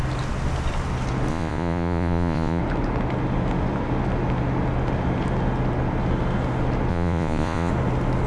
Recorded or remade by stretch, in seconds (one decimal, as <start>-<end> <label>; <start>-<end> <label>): 0.0-1.3 recorded; 1.3-2.6 remade; 2.6-6.9 recorded; 6.9-7.7 remade; 7.7-8.3 recorded